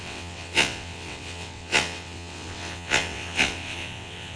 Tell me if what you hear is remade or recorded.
remade